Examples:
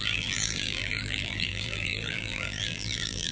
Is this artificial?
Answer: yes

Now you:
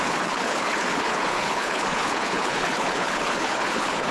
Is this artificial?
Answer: yes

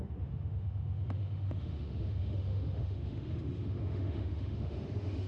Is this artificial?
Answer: yes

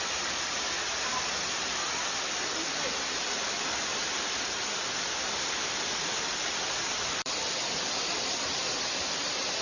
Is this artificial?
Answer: yes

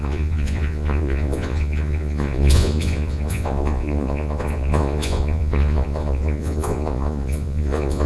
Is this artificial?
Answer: yes